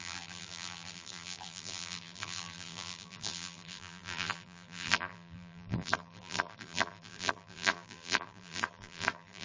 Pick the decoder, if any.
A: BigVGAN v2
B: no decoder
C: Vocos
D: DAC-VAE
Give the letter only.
A